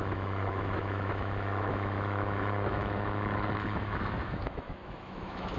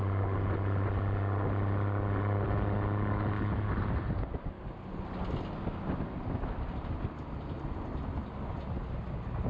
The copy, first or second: first